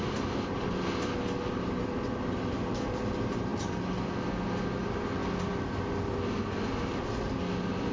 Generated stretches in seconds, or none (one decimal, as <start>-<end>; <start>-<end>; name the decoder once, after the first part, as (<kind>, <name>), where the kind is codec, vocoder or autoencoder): none